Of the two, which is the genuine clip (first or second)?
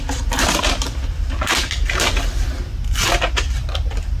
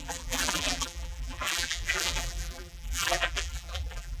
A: first